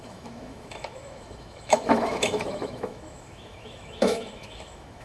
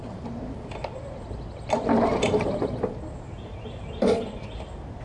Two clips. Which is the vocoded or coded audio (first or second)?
first